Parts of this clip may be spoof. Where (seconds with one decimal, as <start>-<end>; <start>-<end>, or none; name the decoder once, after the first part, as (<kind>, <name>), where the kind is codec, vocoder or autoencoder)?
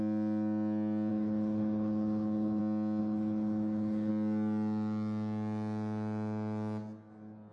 1.1-2.6 (codec, HILCodec); 3.0-4.1